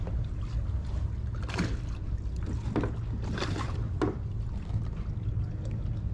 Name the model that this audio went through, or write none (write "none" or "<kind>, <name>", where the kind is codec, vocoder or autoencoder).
none